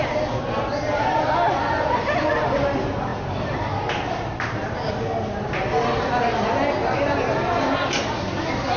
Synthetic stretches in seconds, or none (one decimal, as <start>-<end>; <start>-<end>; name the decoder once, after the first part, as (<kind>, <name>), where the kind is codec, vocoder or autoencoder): none